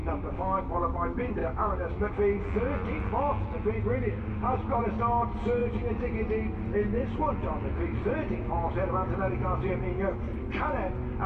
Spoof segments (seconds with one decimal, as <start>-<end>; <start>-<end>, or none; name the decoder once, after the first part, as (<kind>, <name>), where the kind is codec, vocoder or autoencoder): 1.4-2.1 (autoencoder, DAC-VAE)